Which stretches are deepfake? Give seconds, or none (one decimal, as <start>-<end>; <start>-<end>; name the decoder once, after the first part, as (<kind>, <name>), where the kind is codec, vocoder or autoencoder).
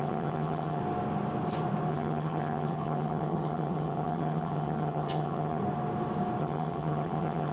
0.0-0.8 (vocoder, HiFi-GAN); 1.9-5.6; 6.4-7.5